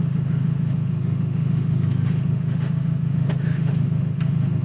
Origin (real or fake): fake